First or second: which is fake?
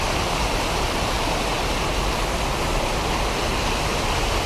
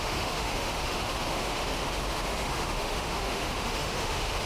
second